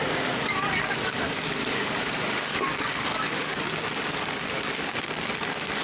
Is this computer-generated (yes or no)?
yes